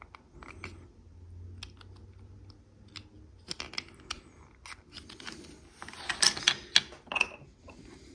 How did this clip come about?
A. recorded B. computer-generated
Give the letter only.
A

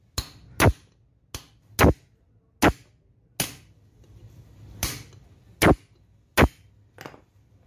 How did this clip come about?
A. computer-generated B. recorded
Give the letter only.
B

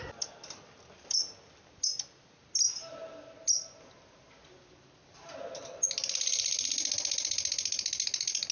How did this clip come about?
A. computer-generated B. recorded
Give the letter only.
B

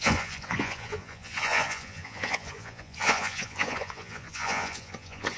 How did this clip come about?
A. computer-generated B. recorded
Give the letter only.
A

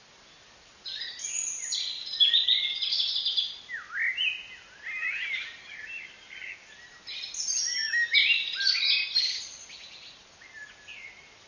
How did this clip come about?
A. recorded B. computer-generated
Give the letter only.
A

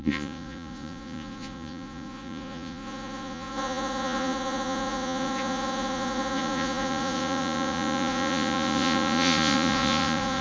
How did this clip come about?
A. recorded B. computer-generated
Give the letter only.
B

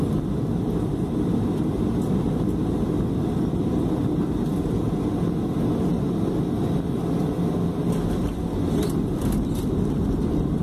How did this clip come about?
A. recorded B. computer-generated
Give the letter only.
A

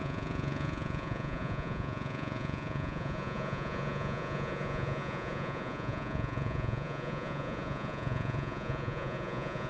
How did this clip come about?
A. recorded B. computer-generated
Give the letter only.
B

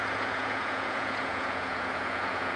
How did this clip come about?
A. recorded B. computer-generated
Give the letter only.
B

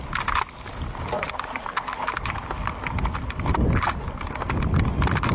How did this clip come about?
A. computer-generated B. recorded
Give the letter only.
B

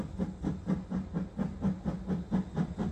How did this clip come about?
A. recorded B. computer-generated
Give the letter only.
A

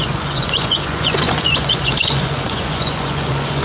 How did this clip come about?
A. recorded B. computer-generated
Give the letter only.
B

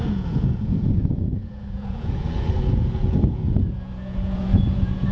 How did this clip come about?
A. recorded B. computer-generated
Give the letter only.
B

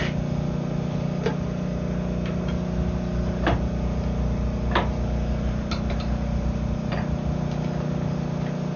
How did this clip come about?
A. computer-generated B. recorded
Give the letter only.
B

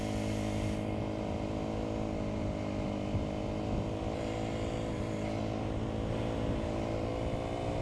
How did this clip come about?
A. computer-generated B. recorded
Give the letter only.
B